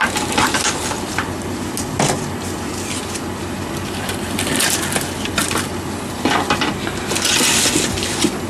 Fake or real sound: real